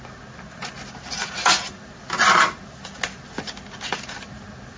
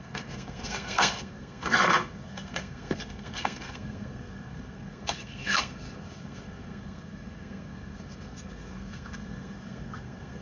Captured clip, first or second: first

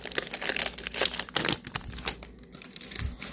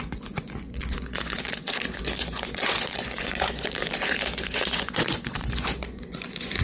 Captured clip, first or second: first